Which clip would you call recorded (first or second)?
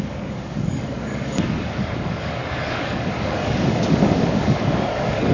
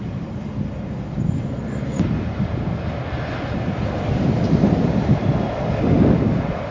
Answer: second